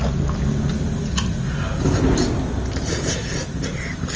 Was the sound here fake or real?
real